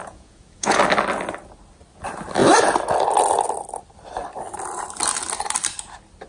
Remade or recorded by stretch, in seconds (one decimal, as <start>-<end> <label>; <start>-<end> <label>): 0.0-0.8 remade; 0.8-6.3 recorded